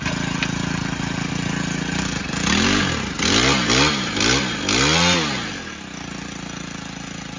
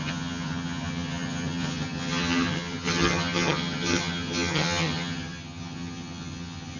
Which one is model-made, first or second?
second